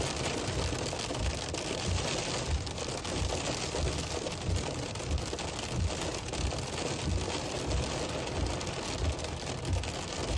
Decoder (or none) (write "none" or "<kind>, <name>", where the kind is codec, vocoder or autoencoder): none